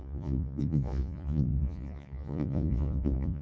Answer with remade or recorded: remade